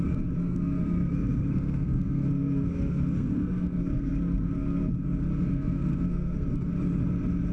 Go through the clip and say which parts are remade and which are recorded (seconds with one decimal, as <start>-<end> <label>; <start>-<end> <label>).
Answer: 0.0-0.4 recorded; 0.4-4.9 remade; 4.9-5.5 recorded; 5.5-6.7 remade; 6.7-7.5 recorded